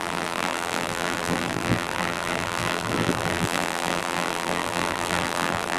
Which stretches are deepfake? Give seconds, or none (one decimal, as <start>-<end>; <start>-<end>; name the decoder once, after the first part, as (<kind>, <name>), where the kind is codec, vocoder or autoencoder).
0.0-5.8 (vocoder, BigVGAN v2)